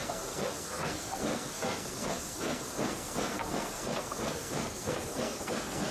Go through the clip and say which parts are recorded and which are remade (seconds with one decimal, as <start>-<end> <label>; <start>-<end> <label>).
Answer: 0.0-5.9 remade